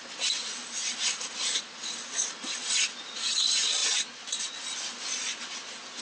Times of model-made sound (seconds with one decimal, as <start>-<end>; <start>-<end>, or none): none